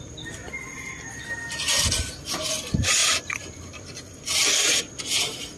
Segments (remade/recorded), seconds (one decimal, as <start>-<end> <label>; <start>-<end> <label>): 0.0-0.4 remade; 0.4-2.0 recorded; 2.0-5.6 remade

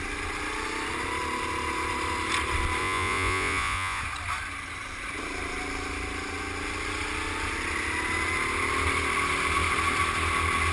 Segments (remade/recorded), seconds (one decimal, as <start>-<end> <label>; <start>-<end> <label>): 0.0-2.8 recorded; 2.8-4.0 remade; 4.0-10.7 recorded

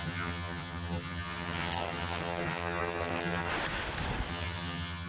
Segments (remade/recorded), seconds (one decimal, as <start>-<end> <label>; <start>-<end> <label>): 0.0-3.5 remade; 3.5-4.3 recorded; 4.3-5.1 remade

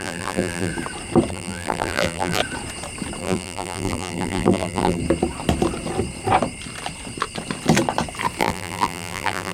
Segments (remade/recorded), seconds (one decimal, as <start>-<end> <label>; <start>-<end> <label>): 0.0-0.7 remade; 0.7-1.3 recorded; 1.3-2.4 remade; 2.4-3.2 recorded; 3.2-5.0 remade; 5.0-8.4 recorded; 8.4-9.5 remade

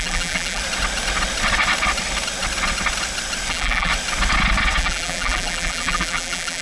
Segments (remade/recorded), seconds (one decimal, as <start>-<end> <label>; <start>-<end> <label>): 0.0-0.6 remade; 0.6-3.5 recorded; 3.5-3.9 remade; 3.9-4.8 recorded; 4.8-6.6 remade

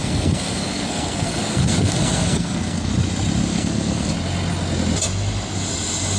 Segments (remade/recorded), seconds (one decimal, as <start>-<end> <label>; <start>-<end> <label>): 0.0-2.9 remade; 2.9-3.5 recorded; 3.5-4.1 remade; 4.1-6.2 recorded

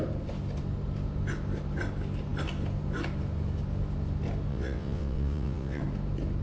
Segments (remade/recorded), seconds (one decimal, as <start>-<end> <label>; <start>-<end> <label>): 0.0-4.5 recorded; 4.5-5.8 remade; 5.8-6.4 recorded

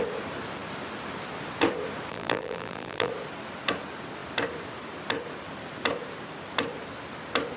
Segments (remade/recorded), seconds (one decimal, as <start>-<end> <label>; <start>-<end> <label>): 0.0-2.1 recorded; 2.1-3.1 remade; 3.1-7.6 recorded